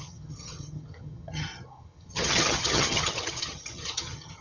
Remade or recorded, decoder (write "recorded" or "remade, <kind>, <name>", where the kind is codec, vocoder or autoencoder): remade, vocoder, HiFi-GAN